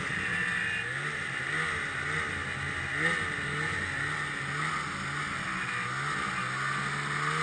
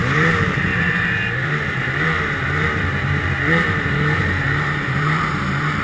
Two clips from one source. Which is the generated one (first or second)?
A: second